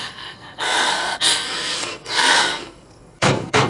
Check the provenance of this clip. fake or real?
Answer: fake